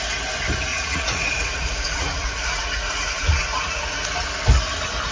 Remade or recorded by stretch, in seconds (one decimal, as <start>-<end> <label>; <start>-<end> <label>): 0.0-0.7 recorded; 0.7-3.8 remade; 3.8-5.1 recorded